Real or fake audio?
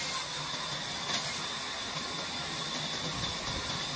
real